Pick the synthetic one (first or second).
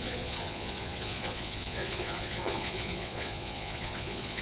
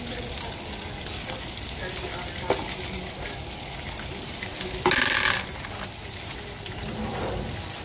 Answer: first